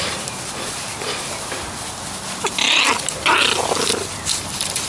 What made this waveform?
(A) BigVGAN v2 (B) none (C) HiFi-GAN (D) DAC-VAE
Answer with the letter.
B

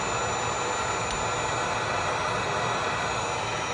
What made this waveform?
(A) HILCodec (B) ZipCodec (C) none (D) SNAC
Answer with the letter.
C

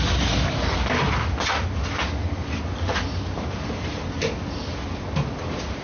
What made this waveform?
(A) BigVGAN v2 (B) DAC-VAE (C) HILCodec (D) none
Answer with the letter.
D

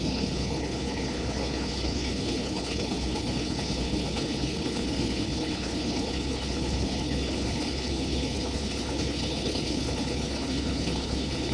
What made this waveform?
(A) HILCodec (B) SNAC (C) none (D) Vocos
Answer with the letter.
A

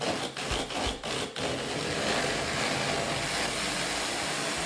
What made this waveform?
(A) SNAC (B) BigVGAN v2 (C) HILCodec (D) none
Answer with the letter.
D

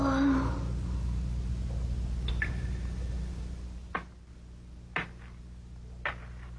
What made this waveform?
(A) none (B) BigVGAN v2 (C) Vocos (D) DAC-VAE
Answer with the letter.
A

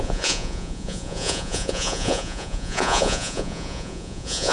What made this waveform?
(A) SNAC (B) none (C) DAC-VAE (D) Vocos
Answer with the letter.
D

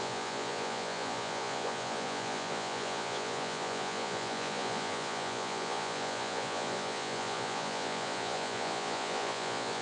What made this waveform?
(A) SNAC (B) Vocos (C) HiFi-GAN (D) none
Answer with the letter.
B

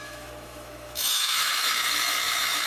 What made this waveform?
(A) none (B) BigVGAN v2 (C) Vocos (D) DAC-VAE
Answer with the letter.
D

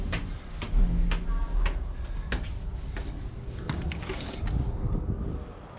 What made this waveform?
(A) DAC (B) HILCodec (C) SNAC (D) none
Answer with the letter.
D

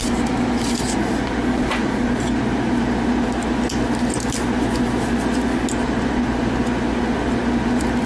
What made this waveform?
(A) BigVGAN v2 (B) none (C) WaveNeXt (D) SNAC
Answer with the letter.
B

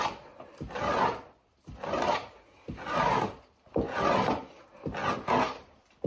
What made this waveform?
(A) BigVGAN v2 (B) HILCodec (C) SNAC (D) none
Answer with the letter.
D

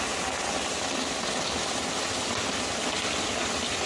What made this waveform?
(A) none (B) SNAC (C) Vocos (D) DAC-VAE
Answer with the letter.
A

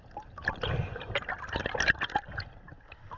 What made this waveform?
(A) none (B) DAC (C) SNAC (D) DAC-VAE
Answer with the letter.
A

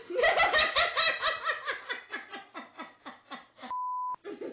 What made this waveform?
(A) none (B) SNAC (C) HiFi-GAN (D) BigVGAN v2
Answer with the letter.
A